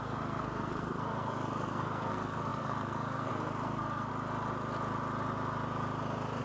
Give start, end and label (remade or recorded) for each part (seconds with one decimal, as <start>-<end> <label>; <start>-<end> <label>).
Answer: 0.0-4.1 remade; 4.1-6.4 recorded